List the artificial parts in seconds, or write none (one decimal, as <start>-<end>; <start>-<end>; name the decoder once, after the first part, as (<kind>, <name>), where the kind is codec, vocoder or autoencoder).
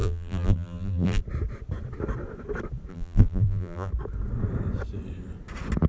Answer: 0.0-1.2 (vocoder, BigVGAN v2); 2.9-3.9